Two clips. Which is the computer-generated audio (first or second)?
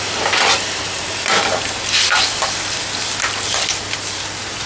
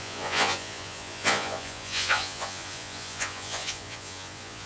second